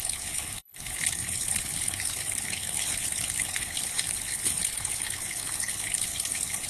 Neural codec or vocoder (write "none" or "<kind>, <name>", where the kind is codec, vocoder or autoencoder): codec, HILCodec